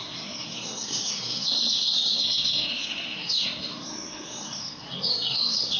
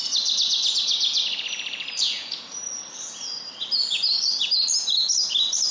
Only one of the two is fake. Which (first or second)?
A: first